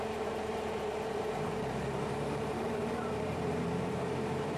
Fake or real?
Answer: fake